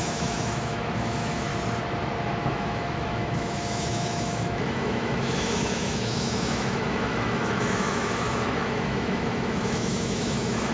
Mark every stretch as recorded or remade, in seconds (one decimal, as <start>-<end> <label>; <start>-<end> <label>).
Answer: 0.0-1.5 remade; 1.5-2.5 recorded; 2.5-10.7 remade